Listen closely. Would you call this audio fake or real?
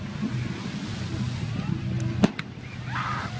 real